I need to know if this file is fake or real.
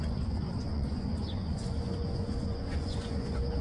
fake